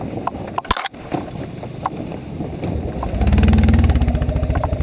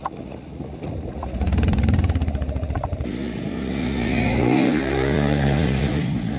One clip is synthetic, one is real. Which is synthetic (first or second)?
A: second